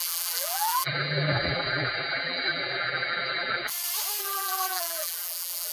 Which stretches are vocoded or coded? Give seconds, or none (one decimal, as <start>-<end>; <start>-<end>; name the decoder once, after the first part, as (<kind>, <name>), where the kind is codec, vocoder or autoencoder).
0.0-3.7 (vocoder, BigVGAN v2); 4.2-5.7

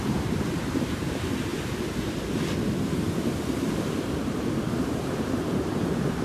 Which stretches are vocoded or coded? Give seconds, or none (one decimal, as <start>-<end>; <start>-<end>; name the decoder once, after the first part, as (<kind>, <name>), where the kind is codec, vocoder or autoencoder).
0.0-1.5 (vocoder, BigVGAN v2); 4.7-6.2

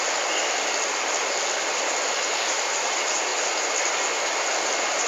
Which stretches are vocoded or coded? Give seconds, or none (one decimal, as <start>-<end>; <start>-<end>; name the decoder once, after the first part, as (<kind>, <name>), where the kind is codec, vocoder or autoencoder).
none

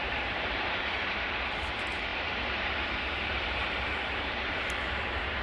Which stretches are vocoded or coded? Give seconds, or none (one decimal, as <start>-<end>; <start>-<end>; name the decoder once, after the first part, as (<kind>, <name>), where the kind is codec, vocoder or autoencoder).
0.0-5.4 (vocoder, BigVGAN v2)

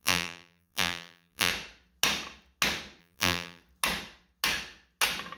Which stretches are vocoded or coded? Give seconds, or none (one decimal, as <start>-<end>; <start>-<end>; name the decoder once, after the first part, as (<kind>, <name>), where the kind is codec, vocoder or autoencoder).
0.0-1.5 (vocoder, BigVGAN v2); 3.0-3.6

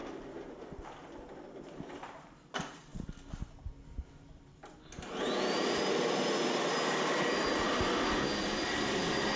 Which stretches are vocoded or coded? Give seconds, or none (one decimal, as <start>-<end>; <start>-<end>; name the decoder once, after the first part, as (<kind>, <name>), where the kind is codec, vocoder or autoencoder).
0.5-2.9 (vocoder, BigVGAN v2); 7.6-9.4

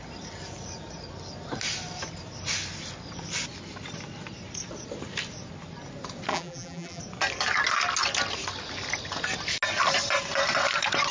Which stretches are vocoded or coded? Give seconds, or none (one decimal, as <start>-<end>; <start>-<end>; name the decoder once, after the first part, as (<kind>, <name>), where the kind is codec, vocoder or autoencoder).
6.3-7.0 (vocoder, BigVGAN v2)

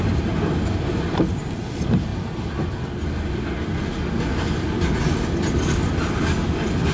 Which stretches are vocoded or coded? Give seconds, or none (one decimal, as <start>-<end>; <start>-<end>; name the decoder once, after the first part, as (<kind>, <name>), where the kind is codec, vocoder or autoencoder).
none